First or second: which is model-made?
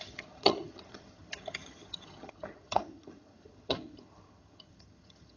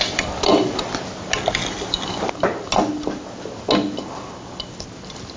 first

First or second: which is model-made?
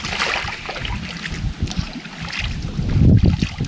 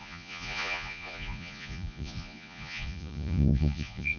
second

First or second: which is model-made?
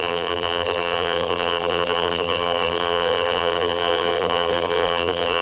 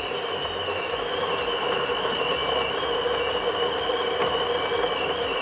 first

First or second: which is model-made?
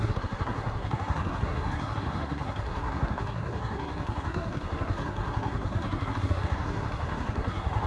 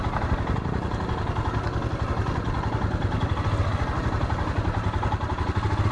first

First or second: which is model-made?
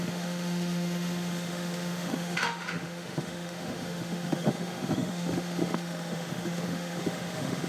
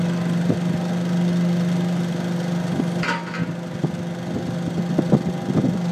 first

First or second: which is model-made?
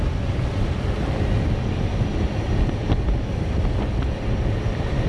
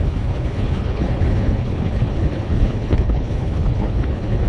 second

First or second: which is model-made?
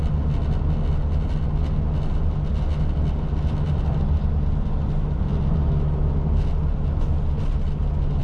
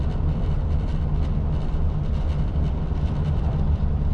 second